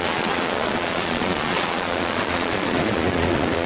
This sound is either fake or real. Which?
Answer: fake